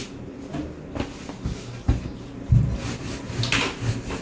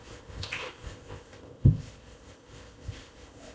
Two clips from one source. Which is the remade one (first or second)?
second